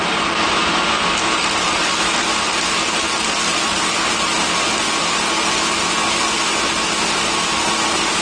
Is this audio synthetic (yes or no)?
no